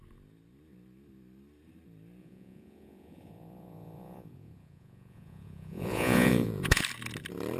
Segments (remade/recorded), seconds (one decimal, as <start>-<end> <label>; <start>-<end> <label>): 0.0-2.2 recorded; 2.2-6.8 remade; 6.8-7.6 recorded